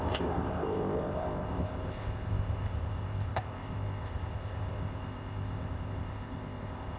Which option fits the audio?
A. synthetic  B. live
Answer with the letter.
A